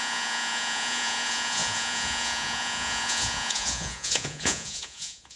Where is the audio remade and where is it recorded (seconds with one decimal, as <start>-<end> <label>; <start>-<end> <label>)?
0.0-5.4 remade